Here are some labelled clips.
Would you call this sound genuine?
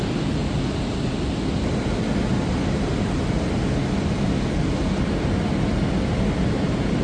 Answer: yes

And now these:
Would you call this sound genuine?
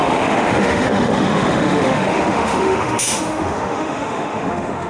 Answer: no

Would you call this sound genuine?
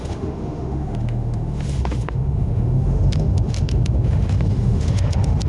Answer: no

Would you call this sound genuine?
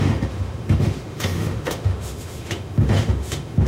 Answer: no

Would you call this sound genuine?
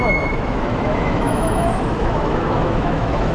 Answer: no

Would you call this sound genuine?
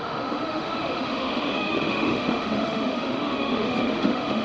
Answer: no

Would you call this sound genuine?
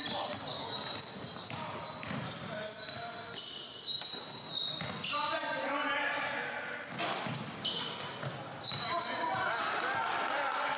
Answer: yes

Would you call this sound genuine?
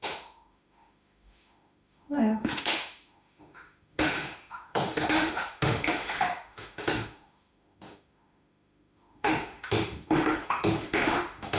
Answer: no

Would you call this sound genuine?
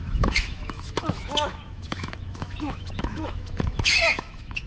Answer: no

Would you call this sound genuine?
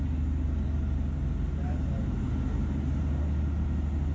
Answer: yes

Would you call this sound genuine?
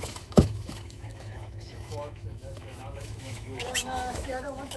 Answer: no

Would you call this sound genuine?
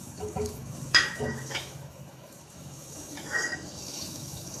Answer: no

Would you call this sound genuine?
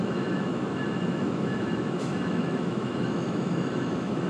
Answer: no